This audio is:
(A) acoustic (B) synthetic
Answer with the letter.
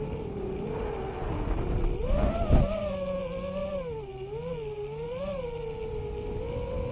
A